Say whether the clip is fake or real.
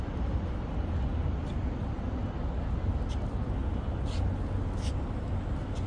real